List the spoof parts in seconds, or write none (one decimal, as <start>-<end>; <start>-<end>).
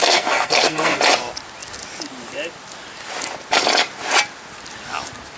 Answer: 0.0-1.0